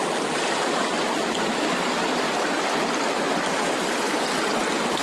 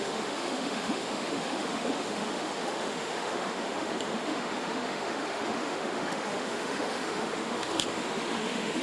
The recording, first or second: first